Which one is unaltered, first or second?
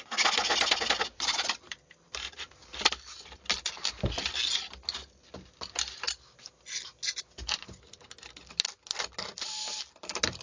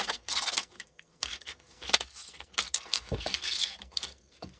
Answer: first